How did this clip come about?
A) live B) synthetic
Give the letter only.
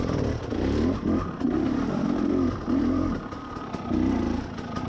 A